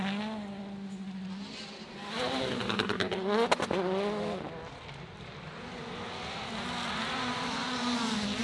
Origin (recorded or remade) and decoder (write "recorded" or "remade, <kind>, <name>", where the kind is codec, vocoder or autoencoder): recorded